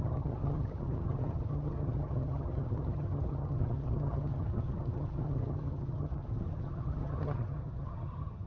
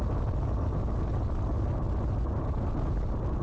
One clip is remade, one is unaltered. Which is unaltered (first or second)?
second